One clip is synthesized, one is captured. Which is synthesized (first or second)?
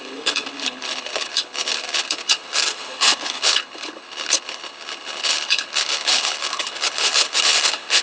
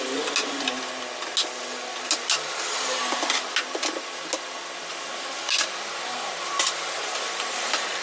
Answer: first